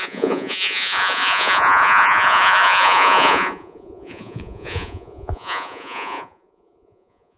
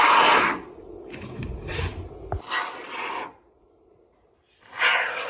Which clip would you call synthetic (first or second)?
first